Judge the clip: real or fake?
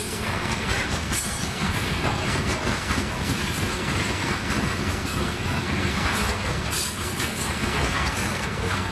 fake